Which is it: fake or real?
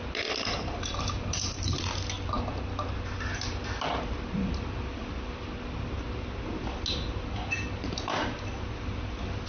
real